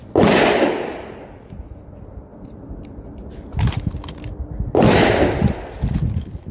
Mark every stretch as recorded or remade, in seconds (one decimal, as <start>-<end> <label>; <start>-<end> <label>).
0.0-6.5 recorded